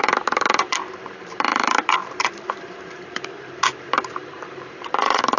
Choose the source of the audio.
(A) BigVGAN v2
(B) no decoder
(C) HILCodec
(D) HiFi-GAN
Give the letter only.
A